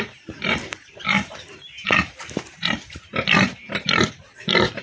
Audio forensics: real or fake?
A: fake